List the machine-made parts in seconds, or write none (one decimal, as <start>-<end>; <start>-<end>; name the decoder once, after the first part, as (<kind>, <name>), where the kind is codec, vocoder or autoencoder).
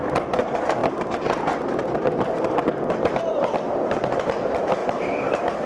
none